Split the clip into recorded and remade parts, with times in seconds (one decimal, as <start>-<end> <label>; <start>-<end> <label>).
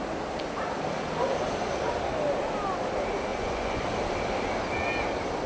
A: 0.0-3.3 recorded; 3.3-3.8 remade; 3.8-5.5 recorded